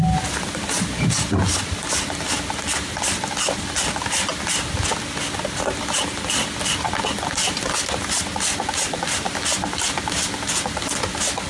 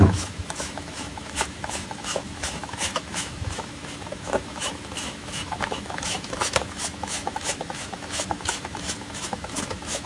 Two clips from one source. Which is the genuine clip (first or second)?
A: first